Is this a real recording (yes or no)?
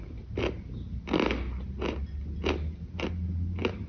yes